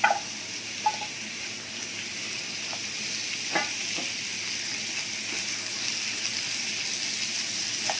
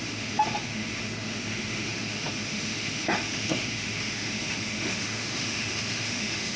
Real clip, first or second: first